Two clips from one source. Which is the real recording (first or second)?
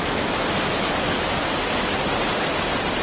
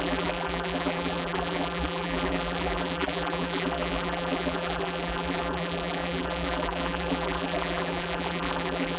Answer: first